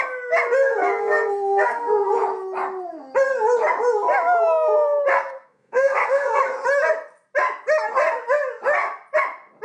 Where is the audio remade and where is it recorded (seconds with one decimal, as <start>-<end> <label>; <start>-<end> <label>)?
0.0-0.8 recorded; 0.8-2.1 remade; 2.1-5.1 recorded; 5.1-6.4 remade; 6.4-9.6 recorded